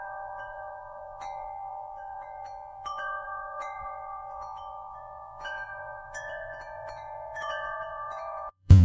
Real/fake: fake